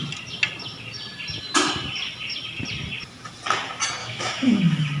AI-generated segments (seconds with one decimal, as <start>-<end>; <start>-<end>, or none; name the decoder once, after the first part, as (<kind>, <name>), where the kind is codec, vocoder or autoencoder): 4.0-4.6 (autoencoder, DAC-VAE)